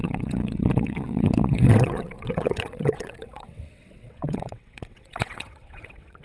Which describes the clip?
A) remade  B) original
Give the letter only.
A